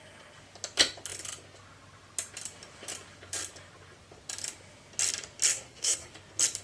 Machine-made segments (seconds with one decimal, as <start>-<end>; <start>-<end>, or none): 5.5-6.1